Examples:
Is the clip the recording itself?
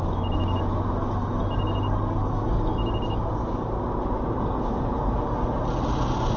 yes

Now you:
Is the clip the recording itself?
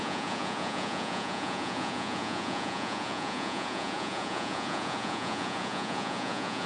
no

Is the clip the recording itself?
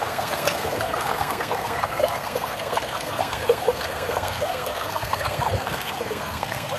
no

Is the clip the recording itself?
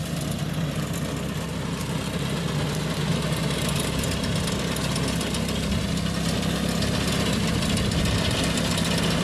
yes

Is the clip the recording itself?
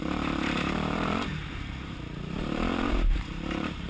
no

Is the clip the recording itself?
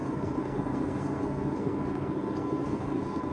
no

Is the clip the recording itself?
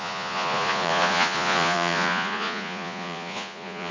no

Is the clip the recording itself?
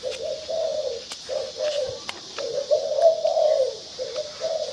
no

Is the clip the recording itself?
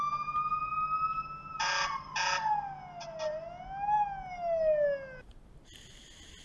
yes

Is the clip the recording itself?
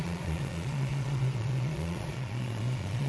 no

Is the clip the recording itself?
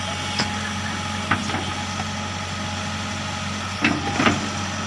yes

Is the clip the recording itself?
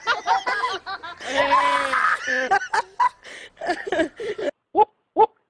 yes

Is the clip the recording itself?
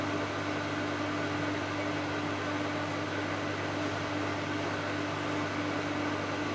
yes